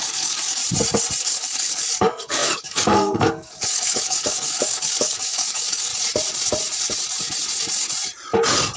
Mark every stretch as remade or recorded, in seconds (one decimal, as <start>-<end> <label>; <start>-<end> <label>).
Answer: 0.0-0.6 remade; 0.6-1.2 recorded; 1.2-5.9 remade; 5.9-8.8 recorded